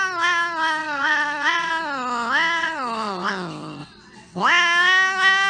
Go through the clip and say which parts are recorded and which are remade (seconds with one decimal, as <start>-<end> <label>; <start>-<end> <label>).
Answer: 0.0-0.8 recorded; 0.8-1.7 remade; 1.7-2.6 recorded; 2.6-3.3 remade; 3.3-3.8 recorded; 3.8-4.4 remade; 4.4-5.5 recorded